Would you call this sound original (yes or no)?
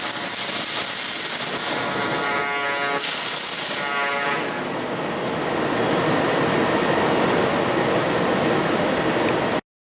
yes